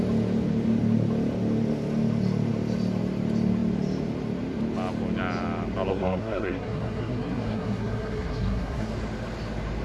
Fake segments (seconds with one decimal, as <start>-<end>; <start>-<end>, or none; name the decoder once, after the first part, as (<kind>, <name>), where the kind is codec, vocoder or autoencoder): 5.9-8.9 (codec, SNAC)